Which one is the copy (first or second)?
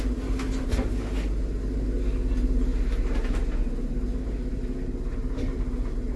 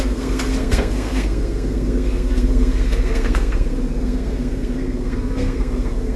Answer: second